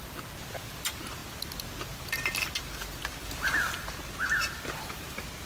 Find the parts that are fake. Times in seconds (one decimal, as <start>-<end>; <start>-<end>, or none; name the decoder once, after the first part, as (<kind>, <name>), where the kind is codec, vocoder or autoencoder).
none